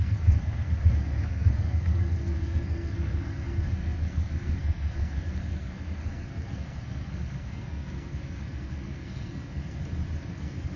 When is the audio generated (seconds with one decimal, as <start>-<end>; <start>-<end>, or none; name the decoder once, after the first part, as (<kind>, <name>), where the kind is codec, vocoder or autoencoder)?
0.0-9.8 (codec, SNAC); 10.3-10.8